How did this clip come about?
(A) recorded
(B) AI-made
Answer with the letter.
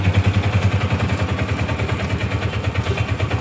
A